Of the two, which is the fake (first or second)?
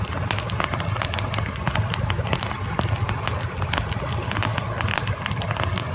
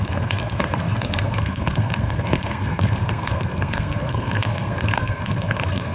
second